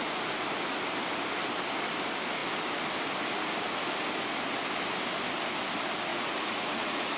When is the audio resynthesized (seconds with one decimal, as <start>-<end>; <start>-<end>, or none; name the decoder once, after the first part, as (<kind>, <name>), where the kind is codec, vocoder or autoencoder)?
6.1-7.2 (vocoder, Vocos)